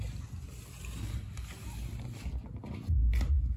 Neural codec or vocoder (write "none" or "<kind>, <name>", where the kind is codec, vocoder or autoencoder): none